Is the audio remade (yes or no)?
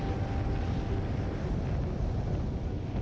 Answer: no